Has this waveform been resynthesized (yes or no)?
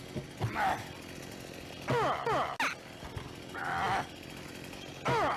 no